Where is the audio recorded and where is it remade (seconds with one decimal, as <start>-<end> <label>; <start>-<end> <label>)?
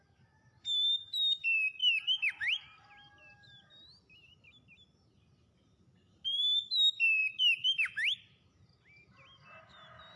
0.0-10.2 recorded